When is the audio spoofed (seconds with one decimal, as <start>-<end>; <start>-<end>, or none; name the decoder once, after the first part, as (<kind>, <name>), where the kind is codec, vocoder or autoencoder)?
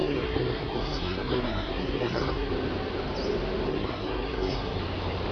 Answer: 0.0-2.5 (codec, SNAC); 3.7-4.8